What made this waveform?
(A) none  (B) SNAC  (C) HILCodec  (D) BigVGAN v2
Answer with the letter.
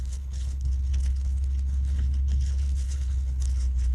C